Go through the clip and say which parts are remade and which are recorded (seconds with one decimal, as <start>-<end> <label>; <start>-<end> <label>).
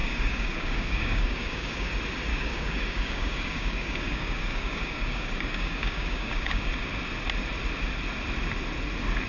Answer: 0.0-1.9 remade; 1.9-2.3 recorded; 2.3-6.7 remade; 6.7-9.3 recorded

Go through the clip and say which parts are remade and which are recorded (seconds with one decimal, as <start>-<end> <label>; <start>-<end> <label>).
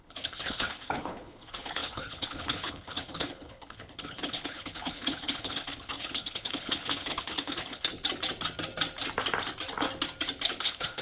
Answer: 0.0-7.9 remade; 7.9-10.6 recorded; 10.6-11.0 remade